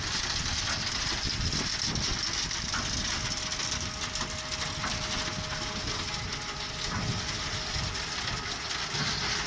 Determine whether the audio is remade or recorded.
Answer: recorded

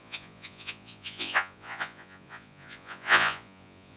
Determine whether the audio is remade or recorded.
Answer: remade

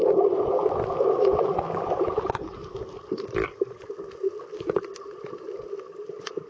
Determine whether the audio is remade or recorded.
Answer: recorded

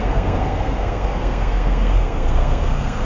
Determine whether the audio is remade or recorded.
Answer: remade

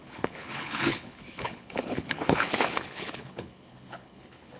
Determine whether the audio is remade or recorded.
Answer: remade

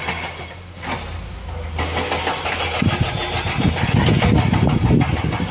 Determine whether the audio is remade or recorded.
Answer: recorded